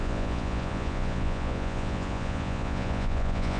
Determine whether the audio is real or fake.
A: fake